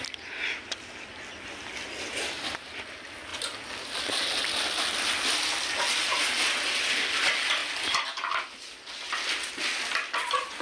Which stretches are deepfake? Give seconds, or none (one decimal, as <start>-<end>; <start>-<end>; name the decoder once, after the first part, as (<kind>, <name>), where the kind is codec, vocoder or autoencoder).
none